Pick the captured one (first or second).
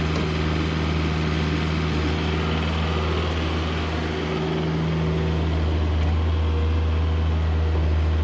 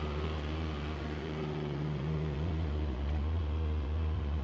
first